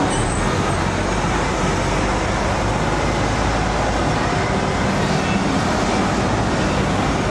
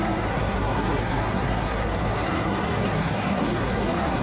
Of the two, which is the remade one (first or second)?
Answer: second